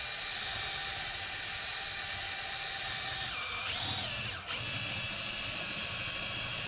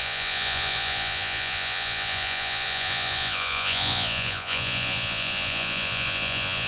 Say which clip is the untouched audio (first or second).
first